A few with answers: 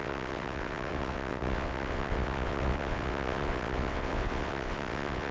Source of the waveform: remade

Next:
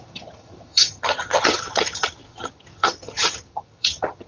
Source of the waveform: remade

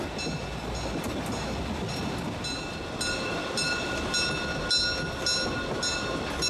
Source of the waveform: recorded